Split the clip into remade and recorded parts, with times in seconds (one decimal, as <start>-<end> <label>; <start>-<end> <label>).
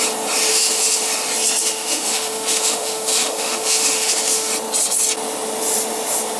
0.0-0.5 recorded; 0.5-1.1 remade; 1.1-1.6 recorded; 1.6-4.5 remade; 4.5-6.4 recorded